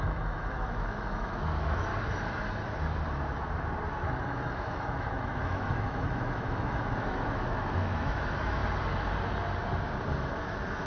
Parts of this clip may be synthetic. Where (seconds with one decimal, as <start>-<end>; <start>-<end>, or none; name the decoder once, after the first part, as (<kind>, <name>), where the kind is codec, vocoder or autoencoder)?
0.0-1.9 (autoencoder, DAC-VAE); 3.9-8.6; 10.2-10.9